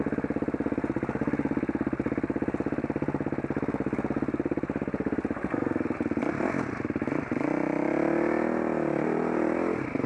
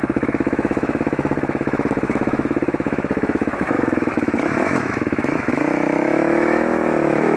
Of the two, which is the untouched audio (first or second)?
first